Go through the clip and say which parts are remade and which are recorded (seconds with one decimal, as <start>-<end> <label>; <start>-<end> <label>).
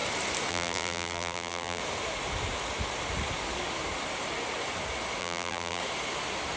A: 0.0-0.5 recorded; 0.5-1.8 remade; 1.8-5.2 recorded; 5.2-5.8 remade; 5.8-6.6 recorded